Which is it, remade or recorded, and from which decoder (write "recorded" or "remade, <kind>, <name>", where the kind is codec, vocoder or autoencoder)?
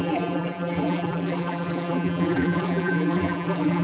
remade, vocoder, BigVGAN v2